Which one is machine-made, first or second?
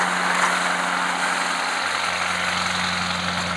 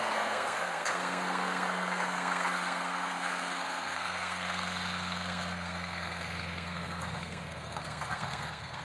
second